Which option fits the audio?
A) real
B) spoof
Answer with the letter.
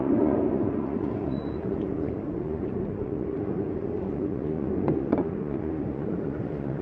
B